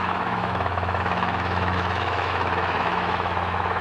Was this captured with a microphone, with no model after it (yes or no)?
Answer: no